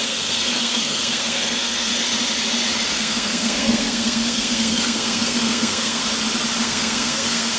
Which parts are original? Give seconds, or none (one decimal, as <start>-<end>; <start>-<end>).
1.9-2.9; 6.0-6.6